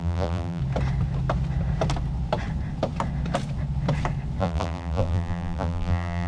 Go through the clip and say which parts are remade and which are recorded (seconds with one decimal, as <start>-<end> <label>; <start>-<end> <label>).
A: 0.0-0.6 remade; 0.6-4.4 recorded; 4.4-6.3 remade